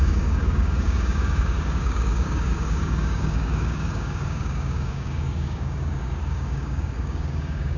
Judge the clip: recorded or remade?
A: remade